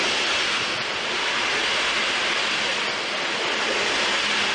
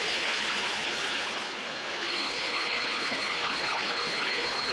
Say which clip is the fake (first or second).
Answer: second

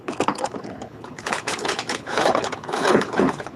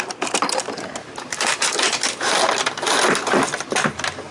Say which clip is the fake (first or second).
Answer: first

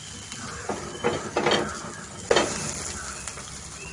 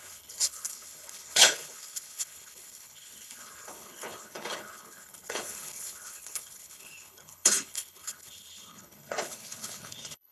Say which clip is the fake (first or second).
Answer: second